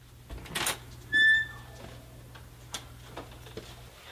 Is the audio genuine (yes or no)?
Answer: yes